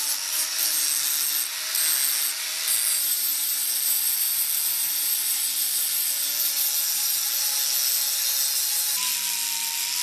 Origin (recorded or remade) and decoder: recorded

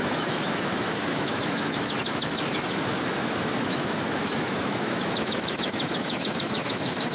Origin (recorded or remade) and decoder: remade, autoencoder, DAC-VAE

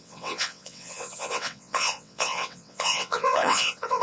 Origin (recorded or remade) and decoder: remade, vocoder, WaveNeXt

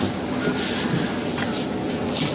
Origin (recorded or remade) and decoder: recorded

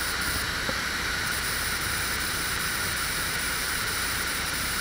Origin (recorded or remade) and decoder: remade, vocoder, BigVGAN v2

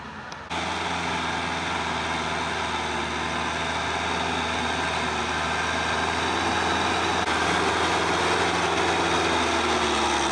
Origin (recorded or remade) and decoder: recorded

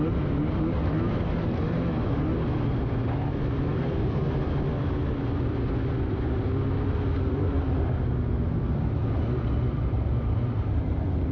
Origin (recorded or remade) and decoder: recorded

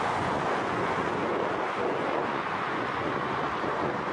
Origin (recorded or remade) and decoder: remade, vocoder, Vocos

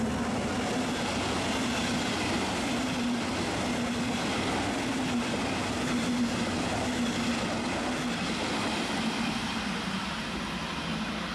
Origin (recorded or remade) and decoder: recorded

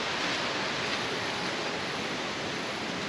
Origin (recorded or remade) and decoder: recorded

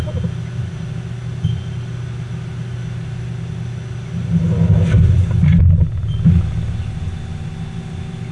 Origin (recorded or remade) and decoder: recorded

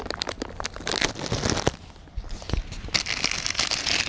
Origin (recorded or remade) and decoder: recorded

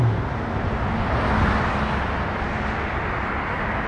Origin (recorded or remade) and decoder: recorded